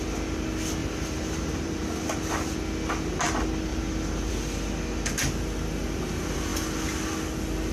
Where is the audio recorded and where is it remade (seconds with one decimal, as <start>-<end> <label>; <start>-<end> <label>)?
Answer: 0.0-0.8 recorded; 0.8-1.8 remade; 1.8-3.7 recorded; 3.7-4.3 remade; 4.3-7.7 recorded